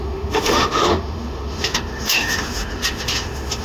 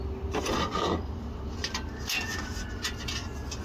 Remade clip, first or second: first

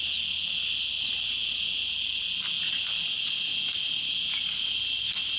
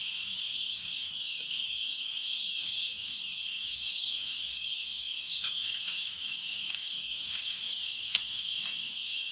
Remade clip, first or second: second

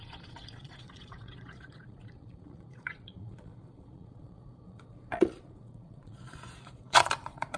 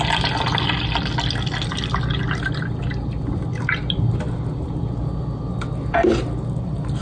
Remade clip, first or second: first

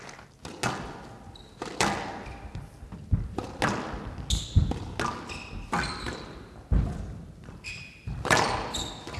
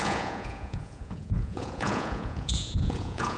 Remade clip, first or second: second